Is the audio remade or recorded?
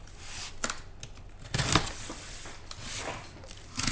recorded